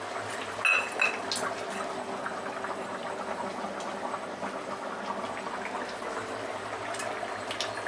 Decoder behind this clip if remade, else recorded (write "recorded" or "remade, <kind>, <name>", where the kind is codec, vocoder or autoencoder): recorded